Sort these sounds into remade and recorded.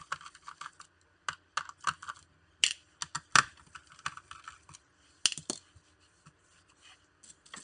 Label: recorded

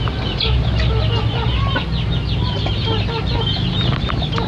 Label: recorded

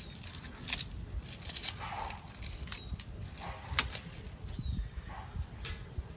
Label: recorded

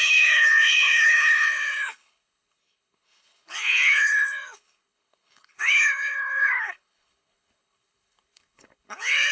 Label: remade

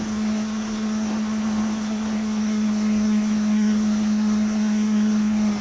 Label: remade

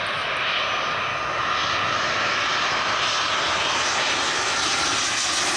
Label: recorded